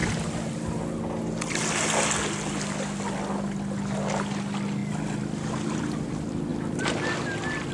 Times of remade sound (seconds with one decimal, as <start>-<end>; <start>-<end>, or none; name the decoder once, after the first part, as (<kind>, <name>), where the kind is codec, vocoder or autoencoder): none